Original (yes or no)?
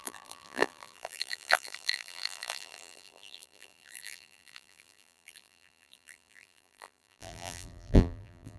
no